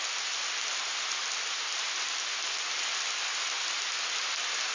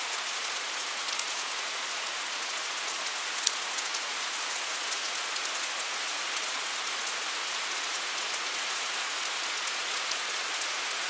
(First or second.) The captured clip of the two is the first